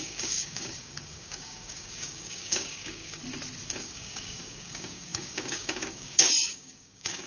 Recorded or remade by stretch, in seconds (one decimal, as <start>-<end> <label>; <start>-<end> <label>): 0.0-3.2 remade; 3.2-3.8 recorded; 3.8-7.3 remade